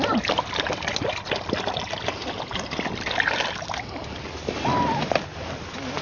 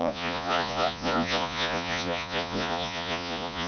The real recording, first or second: first